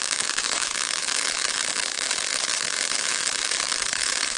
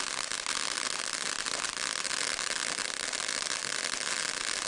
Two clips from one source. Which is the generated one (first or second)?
first